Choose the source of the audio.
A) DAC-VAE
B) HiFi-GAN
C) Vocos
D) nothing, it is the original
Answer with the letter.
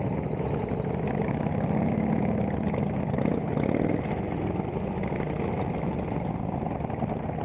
D